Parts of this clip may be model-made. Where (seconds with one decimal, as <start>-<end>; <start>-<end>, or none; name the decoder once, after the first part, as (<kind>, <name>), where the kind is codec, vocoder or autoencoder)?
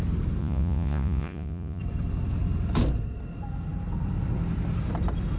0.4-1.8 (vocoder, Vocos)